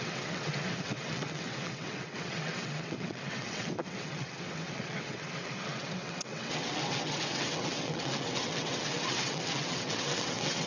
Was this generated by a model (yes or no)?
yes